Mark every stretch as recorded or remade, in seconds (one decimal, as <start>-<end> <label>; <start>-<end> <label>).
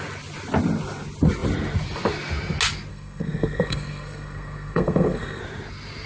0.0-2.9 recorded; 2.9-5.4 remade; 5.4-6.1 recorded